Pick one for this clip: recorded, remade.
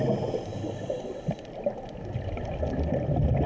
recorded